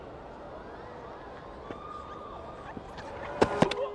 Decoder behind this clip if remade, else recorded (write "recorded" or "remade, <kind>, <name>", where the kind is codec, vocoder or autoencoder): recorded